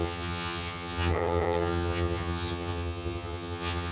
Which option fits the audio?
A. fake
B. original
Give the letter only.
A